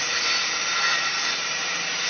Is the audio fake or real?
real